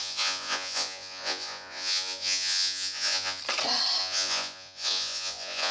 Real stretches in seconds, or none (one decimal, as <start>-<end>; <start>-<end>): 3.4-4.0